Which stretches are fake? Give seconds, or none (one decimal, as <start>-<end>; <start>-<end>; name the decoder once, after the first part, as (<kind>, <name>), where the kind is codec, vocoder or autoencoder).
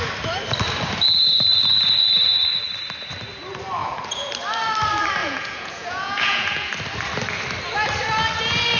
3.8-4.3 (vocoder, Vocos); 5.2-6.7